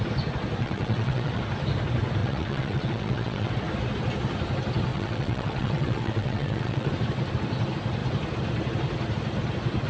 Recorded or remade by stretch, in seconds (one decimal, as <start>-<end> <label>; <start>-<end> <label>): 0.0-0.6 recorded; 0.6-1.4 remade; 1.4-2.2 recorded; 2.2-3.5 remade; 3.5-4.9 recorded; 4.9-6.9 remade; 6.9-9.9 recorded